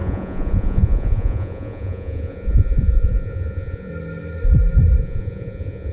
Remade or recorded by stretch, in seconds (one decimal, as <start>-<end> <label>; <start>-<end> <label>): 0.0-3.9 remade; 3.9-5.0 recorded; 5.0-5.9 remade